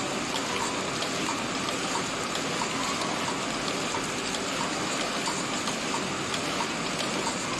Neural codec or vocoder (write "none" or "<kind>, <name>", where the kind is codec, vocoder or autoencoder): none